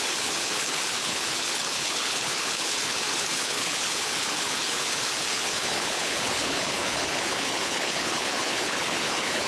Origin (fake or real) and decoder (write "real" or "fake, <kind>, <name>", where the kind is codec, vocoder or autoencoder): fake, codec, HILCodec